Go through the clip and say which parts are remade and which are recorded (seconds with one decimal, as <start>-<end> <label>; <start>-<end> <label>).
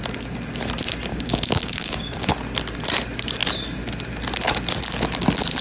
0.0-1.1 recorded; 1.1-2.3 remade; 2.3-5.6 recorded